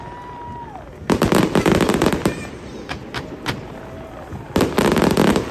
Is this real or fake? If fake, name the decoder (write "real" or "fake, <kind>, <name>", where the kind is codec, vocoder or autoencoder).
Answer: real